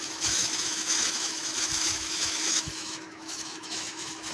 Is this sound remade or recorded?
remade